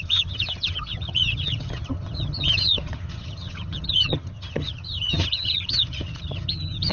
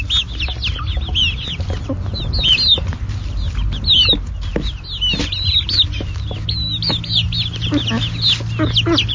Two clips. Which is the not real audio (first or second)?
first